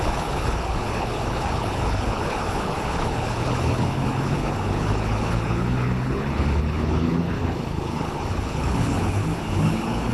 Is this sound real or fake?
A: fake